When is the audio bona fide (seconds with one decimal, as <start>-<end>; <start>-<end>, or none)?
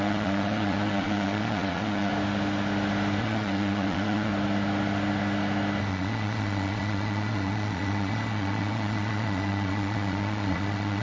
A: 2.1-3.2; 4.3-5.9